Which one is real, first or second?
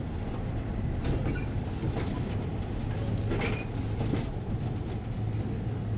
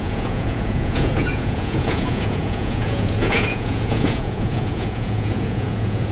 first